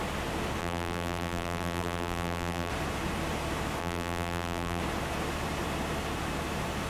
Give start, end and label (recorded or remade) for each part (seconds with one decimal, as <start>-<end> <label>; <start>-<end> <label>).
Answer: 0.0-0.6 recorded; 0.6-2.7 remade; 2.7-3.8 recorded; 3.8-4.8 remade; 4.8-6.9 recorded